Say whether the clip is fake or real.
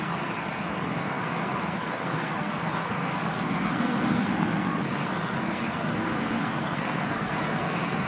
fake